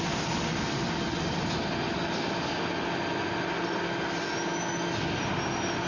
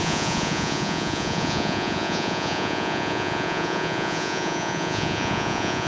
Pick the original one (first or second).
first